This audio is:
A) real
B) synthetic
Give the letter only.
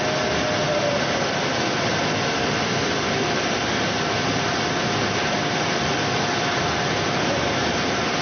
A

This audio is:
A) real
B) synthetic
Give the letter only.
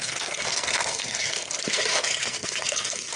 B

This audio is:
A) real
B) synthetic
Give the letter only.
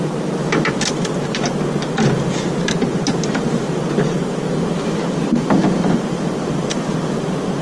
A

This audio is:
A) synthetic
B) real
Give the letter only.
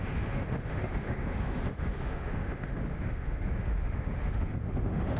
A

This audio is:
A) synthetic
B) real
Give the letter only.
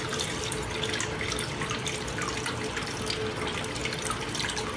B